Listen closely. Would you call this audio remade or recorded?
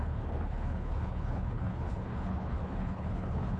remade